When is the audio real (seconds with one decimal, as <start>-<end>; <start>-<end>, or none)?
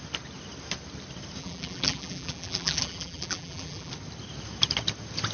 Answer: 0.0-1.4; 3.9-5.3